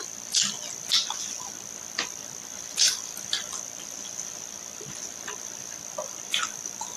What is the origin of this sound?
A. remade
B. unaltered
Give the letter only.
B